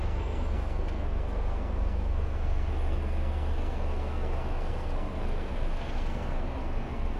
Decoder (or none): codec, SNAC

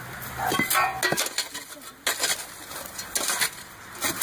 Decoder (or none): none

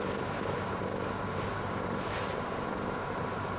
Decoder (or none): vocoder, BigVGAN v2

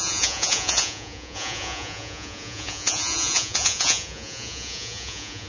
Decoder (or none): vocoder, Vocos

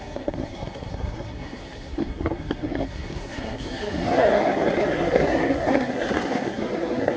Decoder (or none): codec, SNAC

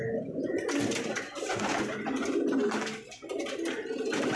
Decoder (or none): none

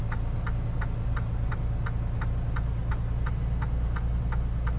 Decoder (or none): none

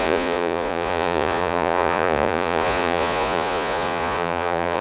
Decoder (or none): vocoder, Vocos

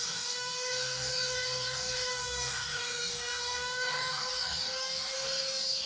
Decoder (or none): codec, DAC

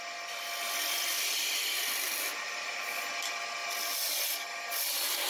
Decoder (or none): none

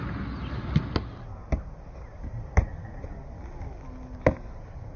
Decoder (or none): none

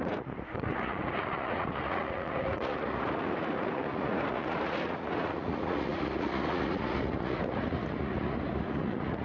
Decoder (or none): vocoder, Vocos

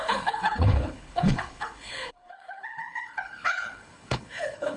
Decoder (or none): codec, HILCodec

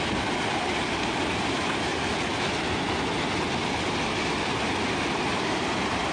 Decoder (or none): none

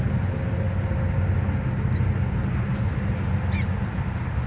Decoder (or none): none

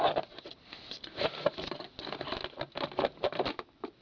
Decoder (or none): none